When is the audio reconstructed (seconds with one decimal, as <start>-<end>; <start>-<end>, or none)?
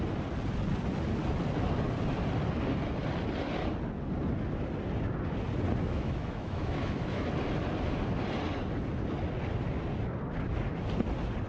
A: 5.8-7.3